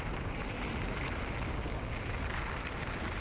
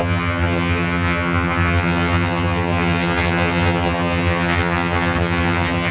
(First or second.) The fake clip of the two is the second